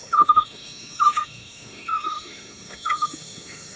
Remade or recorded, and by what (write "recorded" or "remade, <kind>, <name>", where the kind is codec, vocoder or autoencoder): remade, autoencoder, DAC-VAE